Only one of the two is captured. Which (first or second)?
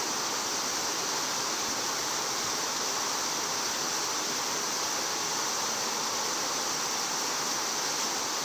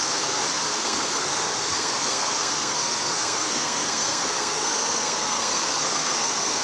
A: first